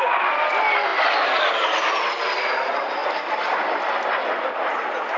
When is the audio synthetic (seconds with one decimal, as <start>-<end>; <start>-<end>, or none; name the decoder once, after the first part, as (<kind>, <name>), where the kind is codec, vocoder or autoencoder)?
3.0-3.5 (vocoder, BigVGAN v2)